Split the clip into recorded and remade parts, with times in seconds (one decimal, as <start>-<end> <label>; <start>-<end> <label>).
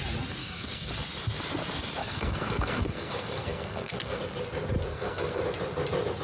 0.0-0.4 recorded; 0.4-0.9 remade; 0.9-2.0 recorded; 2.0-4.2 remade; 4.2-4.9 recorded; 4.9-5.4 remade; 5.4-6.2 recorded